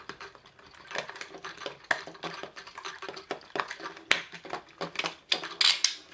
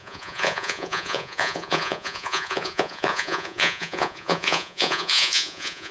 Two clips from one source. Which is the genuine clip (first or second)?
first